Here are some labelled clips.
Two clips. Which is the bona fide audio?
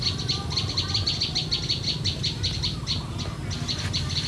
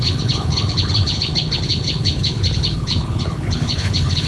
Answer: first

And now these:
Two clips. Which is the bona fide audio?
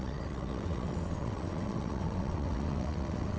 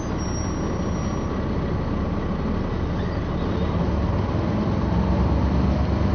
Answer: second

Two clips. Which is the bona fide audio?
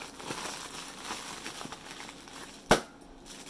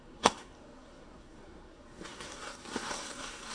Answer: first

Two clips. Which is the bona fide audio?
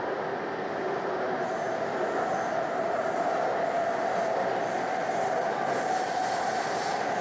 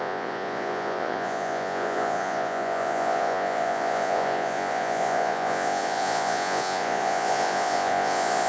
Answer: first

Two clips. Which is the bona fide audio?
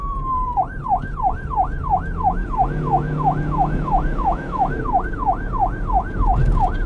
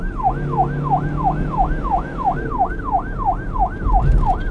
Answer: second